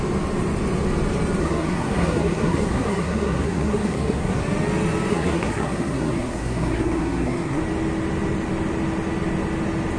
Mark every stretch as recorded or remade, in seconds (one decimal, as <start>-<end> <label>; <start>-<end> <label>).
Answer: 0.0-1.4 recorded; 1.4-4.4 remade; 4.4-5.1 recorded; 5.1-7.6 remade; 7.6-10.0 recorded